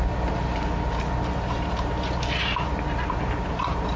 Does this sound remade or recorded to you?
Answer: remade